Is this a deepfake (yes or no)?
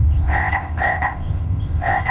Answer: yes